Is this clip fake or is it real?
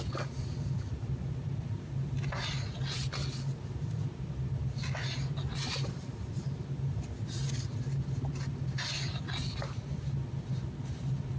real